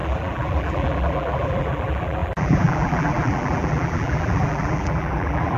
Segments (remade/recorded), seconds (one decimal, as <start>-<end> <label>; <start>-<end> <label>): 0.0-5.6 remade